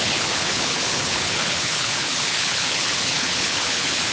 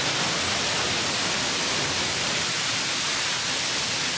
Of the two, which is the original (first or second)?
second